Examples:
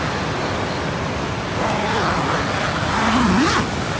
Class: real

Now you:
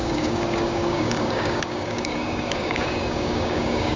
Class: fake